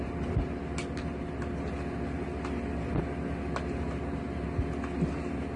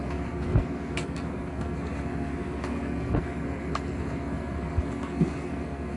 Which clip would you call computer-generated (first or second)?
second